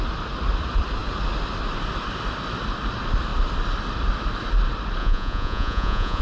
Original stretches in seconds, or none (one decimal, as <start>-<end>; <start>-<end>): 0.0-5.0